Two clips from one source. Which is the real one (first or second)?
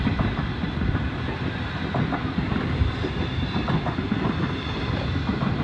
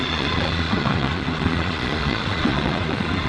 first